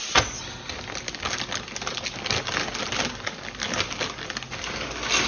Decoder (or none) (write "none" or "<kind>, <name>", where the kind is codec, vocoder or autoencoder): none